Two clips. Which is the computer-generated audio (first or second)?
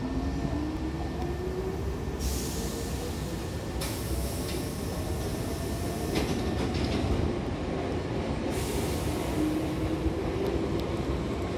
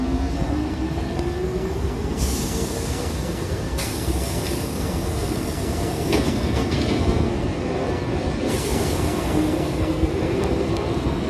second